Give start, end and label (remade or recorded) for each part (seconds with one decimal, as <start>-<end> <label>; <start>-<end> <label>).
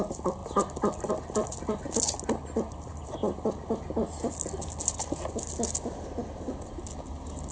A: 0.0-7.5 recorded